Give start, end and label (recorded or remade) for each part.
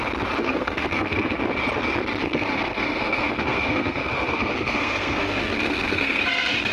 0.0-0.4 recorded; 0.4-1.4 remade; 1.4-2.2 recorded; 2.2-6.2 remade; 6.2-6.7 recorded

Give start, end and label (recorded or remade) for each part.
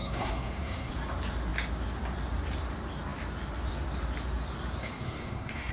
0.0-0.9 remade; 0.9-4.8 recorded; 4.8-5.7 remade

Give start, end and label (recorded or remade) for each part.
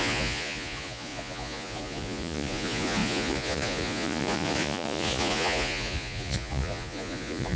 0.0-7.6 remade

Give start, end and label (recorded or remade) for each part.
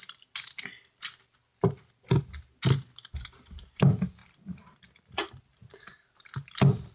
0.0-6.9 recorded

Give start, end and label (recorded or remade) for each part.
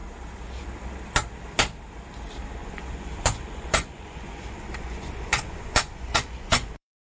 0.0-2.6 recorded; 2.6-7.1 remade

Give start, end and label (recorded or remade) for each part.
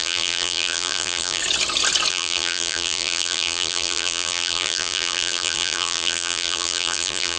0.0-1.4 remade; 1.4-2.1 recorded; 2.1-7.4 remade